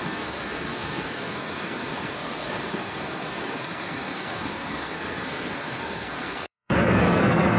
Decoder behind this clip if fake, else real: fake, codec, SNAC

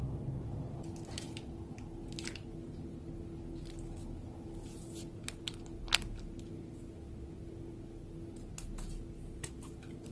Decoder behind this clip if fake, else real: real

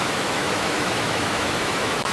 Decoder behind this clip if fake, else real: fake, autoencoder, DAC-VAE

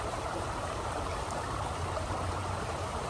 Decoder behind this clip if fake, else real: fake, vocoder, BigVGAN v2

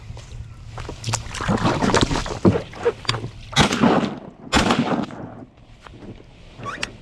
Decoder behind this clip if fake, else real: real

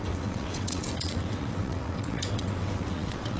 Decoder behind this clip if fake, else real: fake, vocoder, WaveNeXt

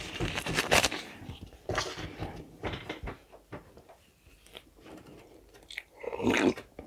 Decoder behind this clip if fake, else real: fake, vocoder, BigVGAN v2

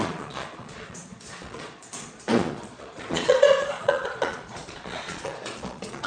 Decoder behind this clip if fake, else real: fake, vocoder, Vocos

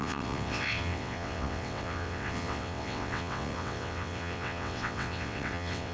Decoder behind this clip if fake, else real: fake, vocoder, WaveNeXt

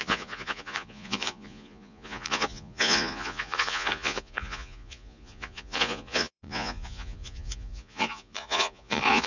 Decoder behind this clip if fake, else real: fake, vocoder, Vocos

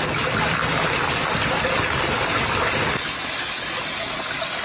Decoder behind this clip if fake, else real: real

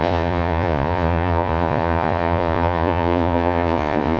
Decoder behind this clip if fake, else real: fake, vocoder, Vocos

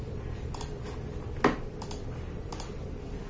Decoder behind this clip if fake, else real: real